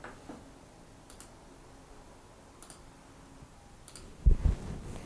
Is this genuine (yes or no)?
yes